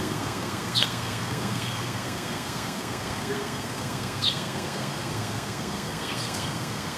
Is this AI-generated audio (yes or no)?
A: yes